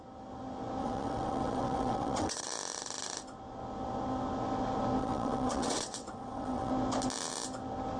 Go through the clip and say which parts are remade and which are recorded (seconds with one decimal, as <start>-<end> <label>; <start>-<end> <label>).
0.0-0.8 recorded; 0.8-2.4 remade; 2.4-5.0 recorded; 5.0-6.7 remade; 6.7-8.0 recorded

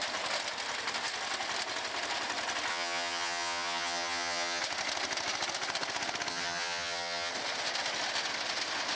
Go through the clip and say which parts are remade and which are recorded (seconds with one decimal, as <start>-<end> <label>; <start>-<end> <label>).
0.0-2.7 recorded; 2.7-4.6 remade; 4.6-6.3 recorded; 6.3-7.3 remade; 7.3-9.0 recorded

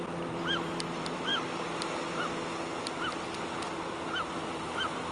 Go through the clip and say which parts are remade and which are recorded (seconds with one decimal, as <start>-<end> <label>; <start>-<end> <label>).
0.0-1.3 remade; 1.3-4.3 recorded; 4.3-5.1 remade

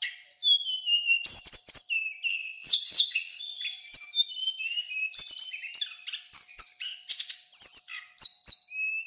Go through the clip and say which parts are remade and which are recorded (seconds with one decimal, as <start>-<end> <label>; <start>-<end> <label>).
0.0-2.3 recorded; 2.3-3.4 remade; 3.4-9.1 recorded

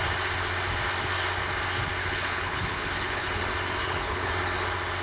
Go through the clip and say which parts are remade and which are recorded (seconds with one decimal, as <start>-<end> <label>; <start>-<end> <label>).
0.0-2.0 recorded; 2.0-3.4 remade; 3.4-3.8 recorded; 3.8-4.3 remade; 4.3-5.0 recorded

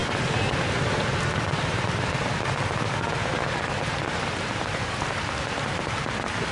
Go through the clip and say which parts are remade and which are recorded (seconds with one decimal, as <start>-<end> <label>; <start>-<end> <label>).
0.0-1.2 remade; 1.2-6.5 recorded